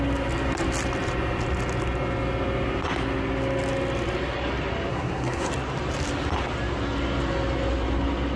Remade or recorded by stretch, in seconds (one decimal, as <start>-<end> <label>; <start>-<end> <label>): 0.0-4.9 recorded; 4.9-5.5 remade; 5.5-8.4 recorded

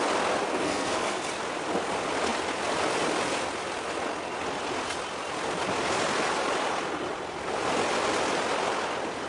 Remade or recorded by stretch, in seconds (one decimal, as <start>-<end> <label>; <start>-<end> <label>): 0.0-0.5 recorded; 0.5-1.2 remade; 1.2-9.3 recorded

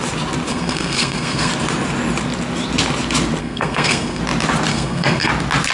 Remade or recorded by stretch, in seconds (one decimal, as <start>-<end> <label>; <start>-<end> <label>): 0.0-0.5 recorded; 0.5-1.5 remade; 1.5-3.4 recorded; 3.4-4.2 remade; 4.2-4.7 recorded; 4.7-5.3 remade; 5.3-5.7 recorded

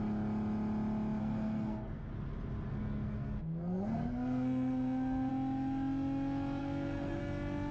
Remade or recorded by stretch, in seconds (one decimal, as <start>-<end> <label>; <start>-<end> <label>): 0.0-1.2 recorded; 1.2-2.1 remade; 2.1-2.7 recorded; 2.7-5.3 remade; 5.3-6.6 recorded; 6.6-7.2 remade; 7.2-7.7 recorded

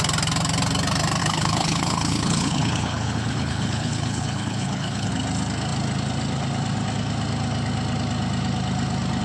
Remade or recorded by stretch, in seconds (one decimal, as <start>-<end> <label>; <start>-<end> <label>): 0.0-1.2 recorded; 1.2-5.1 remade; 5.1-9.2 recorded